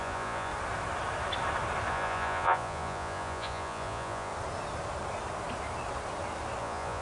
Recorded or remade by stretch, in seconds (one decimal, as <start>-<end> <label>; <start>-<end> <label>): 0.0-0.5 remade; 0.5-1.9 recorded; 1.9-4.3 remade; 4.3-6.6 recorded; 6.6-7.0 remade